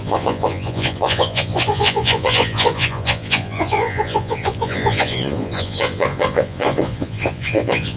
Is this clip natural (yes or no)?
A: no